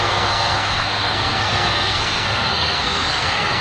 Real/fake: fake